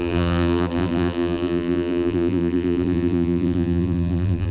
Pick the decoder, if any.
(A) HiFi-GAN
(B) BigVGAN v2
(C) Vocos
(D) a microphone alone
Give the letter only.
B